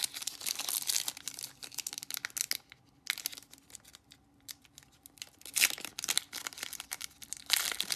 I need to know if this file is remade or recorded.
recorded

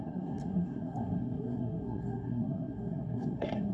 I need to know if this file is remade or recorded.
remade